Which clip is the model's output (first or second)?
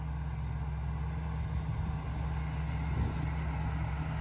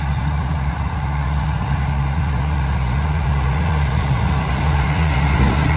second